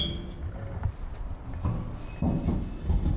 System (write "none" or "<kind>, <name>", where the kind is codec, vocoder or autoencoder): none